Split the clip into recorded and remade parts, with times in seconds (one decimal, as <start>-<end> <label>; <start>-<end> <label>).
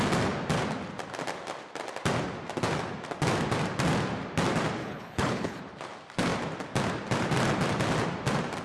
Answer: 0.0-4.8 recorded; 4.8-5.6 remade; 5.6-8.6 recorded